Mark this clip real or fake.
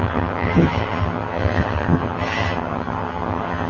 fake